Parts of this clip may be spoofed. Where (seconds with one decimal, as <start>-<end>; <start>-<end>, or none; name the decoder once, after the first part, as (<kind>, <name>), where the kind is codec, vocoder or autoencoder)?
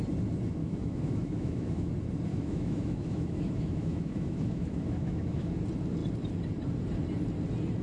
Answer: 0.6-1.9 (autoencoder, DAC-VAE); 2.3-5.5